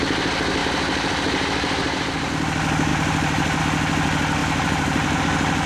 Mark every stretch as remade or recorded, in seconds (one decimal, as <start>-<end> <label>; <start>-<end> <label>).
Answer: 0.0-0.6 recorded; 0.6-2.3 remade; 2.3-2.9 recorded; 2.9-3.6 remade; 3.6-4.4 recorded; 4.4-5.2 remade; 5.2-5.7 recorded